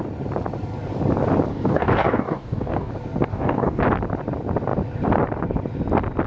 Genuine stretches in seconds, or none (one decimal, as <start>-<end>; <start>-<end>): 0.0-1.5; 2.9-3.3; 3.8-6.3